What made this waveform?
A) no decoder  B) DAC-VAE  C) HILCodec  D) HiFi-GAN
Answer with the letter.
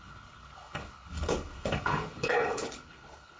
C